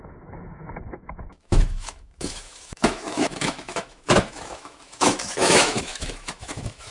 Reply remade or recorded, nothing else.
remade